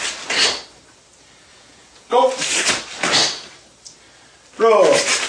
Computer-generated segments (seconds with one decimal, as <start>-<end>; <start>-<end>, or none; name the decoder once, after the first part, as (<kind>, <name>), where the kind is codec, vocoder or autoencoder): 1.5-2.2 (vocoder, Vocos)